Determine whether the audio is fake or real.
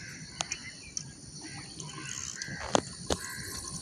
real